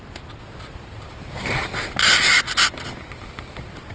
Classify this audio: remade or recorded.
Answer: recorded